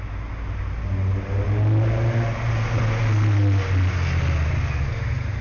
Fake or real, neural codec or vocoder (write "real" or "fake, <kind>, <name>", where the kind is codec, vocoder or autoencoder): real